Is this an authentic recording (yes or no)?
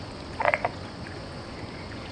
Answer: no